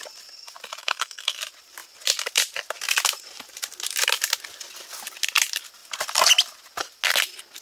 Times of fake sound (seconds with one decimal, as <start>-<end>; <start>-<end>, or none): 0.8-1.4